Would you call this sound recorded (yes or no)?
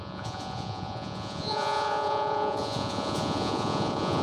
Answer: no